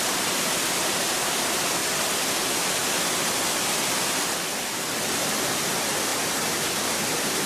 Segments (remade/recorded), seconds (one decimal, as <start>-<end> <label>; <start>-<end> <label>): 0.0-1.8 remade; 1.8-5.1 recorded; 5.1-6.1 remade; 6.1-6.7 recorded; 6.7-7.5 remade